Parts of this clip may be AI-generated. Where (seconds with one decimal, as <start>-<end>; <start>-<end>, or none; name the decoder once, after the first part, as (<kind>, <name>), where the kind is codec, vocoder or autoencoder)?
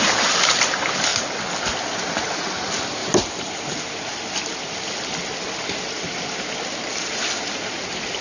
0.0-1.1 (vocoder, BigVGAN v2); 1.9-3.0; 6.9-8.2